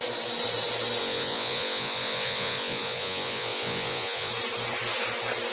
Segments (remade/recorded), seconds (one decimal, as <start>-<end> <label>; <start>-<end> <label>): 0.0-1.0 recorded; 1.0-4.3 remade; 4.3-5.5 recorded